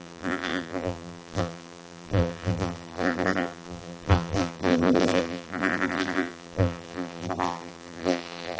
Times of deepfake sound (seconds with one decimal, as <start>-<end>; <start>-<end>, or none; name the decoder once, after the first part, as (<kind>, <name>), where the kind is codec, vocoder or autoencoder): 0.0-8.6 (vocoder, BigVGAN v2)